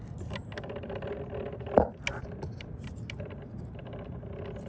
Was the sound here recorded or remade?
recorded